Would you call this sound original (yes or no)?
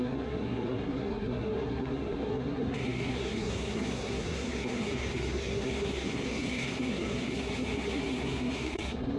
no